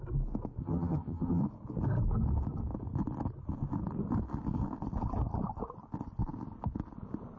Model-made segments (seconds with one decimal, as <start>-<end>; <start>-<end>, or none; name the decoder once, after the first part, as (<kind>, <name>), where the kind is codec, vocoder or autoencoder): 0.6-1.4 (vocoder, HiFi-GAN)